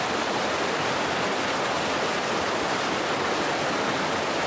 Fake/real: real